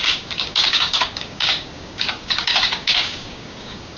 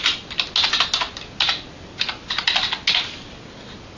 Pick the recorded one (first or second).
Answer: second